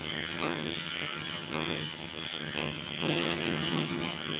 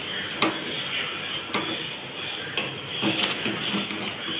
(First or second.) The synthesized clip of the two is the first